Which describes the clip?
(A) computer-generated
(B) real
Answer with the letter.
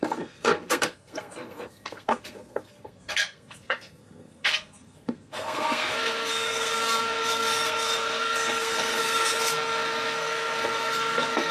A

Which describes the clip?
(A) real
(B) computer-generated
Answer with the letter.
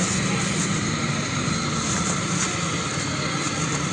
A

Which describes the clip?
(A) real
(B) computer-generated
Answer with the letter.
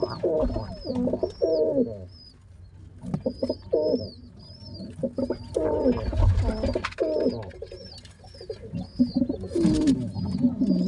A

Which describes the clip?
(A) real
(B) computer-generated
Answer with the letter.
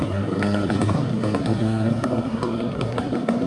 B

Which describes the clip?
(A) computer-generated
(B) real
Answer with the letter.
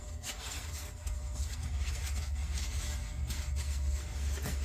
A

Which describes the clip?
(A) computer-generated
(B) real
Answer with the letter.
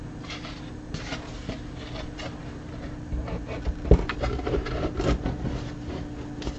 B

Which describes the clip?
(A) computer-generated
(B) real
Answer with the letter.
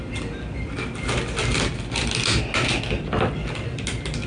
B